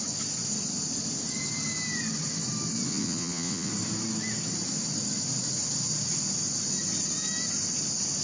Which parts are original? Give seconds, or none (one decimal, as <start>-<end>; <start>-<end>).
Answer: 0.0-2.9; 3.7-8.2